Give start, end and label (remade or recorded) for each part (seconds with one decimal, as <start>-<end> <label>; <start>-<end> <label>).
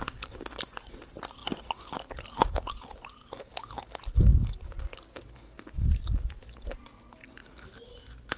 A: 0.0-8.4 recorded